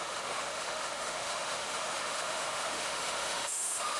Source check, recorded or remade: remade